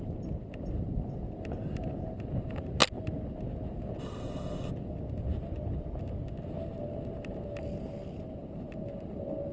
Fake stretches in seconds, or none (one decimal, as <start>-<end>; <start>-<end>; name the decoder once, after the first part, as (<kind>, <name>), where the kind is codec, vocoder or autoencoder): 4.0-4.7 (codec, ZipCodec)